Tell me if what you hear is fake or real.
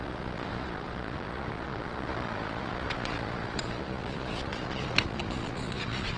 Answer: fake